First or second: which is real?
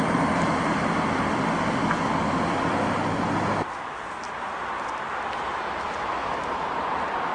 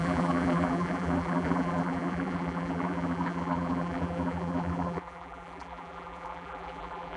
first